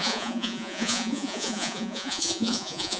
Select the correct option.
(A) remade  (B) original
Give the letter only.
A